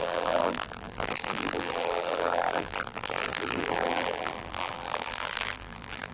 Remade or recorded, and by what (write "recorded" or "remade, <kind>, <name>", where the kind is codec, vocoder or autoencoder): remade, vocoder, BigVGAN v2